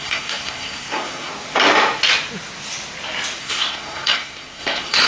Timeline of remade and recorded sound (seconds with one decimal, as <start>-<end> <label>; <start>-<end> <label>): 0.0-1.3 remade; 1.3-3.4 recorded; 3.4-5.1 remade